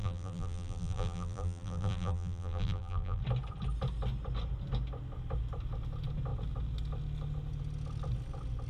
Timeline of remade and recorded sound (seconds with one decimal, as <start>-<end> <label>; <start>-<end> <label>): 0.0-3.2 remade; 3.2-8.7 recorded